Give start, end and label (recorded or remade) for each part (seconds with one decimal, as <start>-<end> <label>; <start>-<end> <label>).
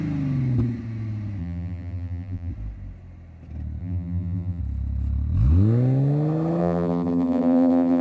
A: 0.0-1.4 recorded; 1.4-2.5 remade; 2.5-3.8 recorded; 3.8-4.6 remade; 4.6-6.6 recorded; 6.6-8.0 remade